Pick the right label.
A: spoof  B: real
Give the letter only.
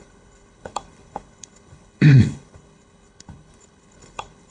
A